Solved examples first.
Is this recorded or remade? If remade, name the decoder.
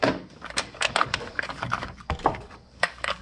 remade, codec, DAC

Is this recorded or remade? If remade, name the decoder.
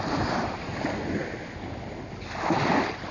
recorded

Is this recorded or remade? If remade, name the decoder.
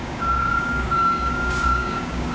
remade, codec, DAC